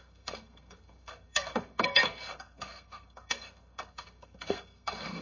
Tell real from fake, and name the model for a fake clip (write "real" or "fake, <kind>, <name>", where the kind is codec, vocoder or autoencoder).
fake, codec, SNAC